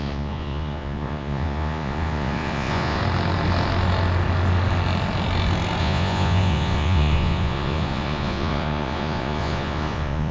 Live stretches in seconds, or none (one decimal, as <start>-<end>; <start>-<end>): 3.0-5.8